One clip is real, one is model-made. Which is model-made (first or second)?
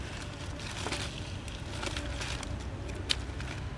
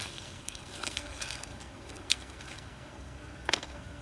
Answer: second